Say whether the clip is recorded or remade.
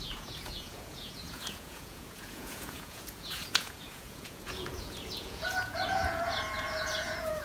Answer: remade